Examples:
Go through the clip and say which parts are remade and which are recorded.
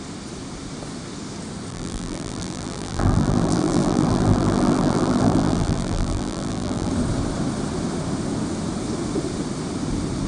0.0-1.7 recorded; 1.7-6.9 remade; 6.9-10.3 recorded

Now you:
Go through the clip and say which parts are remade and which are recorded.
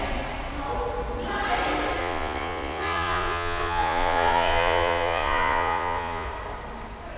0.0-2.0 recorded; 2.0-6.3 remade; 6.3-7.2 recorded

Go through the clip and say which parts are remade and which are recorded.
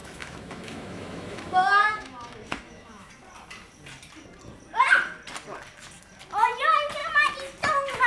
0.0-3.1 remade; 3.1-8.1 recorded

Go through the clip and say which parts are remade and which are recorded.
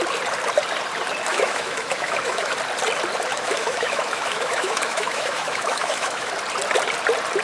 0.0-1.3 recorded; 1.3-2.5 remade; 2.5-3.3 recorded; 3.3-6.3 remade; 6.3-7.4 recorded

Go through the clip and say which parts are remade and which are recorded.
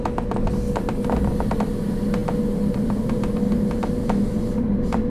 0.0-5.1 recorded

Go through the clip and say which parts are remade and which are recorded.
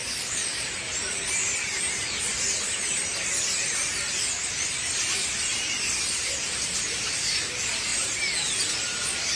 0.0-0.4 remade; 0.4-1.4 recorded; 1.4-2.3 remade; 2.3-5.0 recorded; 5.0-7.9 remade; 7.9-8.8 recorded; 8.8-9.4 remade